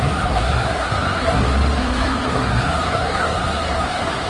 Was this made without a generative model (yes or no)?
no